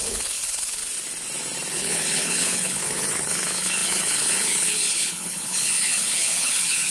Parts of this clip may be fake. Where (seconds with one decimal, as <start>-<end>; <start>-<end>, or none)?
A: 0.0-0.8; 1.7-6.9